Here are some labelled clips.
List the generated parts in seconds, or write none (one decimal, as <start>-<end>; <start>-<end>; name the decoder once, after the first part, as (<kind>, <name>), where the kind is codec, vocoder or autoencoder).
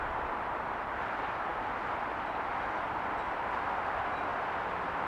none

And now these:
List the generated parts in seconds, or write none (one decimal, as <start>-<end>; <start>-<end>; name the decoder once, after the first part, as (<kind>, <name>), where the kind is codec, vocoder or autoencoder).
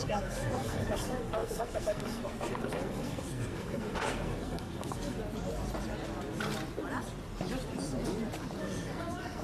0.0-5.2 (codec, SNAC); 8.6-9.4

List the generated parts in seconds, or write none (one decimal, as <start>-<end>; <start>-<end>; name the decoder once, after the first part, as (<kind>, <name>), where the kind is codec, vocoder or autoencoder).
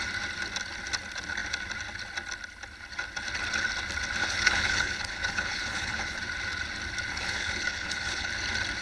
4.2-6.2 (codec, HILCodec); 7.1-8.3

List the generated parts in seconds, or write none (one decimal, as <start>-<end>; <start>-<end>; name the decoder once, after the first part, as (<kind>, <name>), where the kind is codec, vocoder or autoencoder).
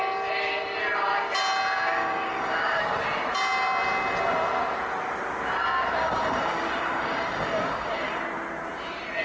1.9-2.8 (codec, DAC); 6.0-8.2